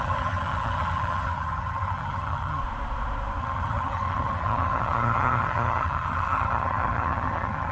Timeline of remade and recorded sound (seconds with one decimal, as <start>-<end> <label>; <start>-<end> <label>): 0.0-2.6 remade; 2.6-3.4 recorded; 3.4-7.7 remade